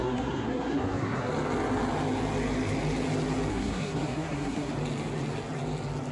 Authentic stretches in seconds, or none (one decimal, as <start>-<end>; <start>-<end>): 1.3-3.5; 4.7-6.1